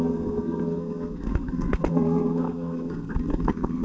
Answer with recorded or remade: remade